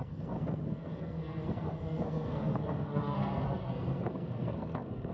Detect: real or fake fake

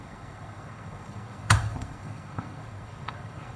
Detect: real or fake fake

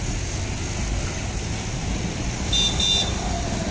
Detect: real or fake real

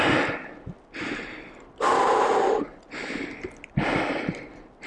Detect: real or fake real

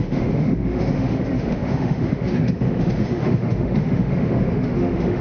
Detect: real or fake fake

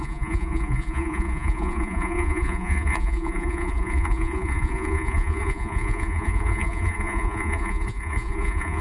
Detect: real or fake fake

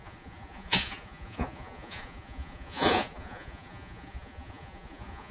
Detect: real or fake fake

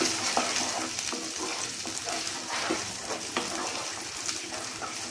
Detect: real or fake real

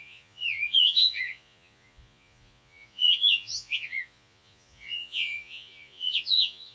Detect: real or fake fake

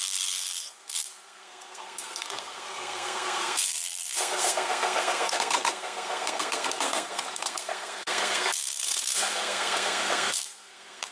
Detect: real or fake fake